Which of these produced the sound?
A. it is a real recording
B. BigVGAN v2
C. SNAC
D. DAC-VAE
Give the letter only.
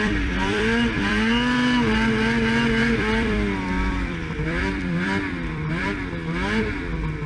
B